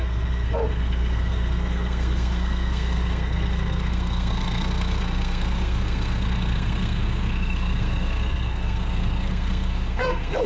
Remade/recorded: remade